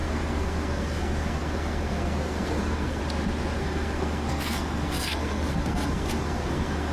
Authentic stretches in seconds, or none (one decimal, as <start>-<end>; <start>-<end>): 3.0-3.6